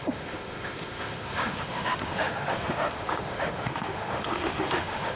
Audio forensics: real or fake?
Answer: fake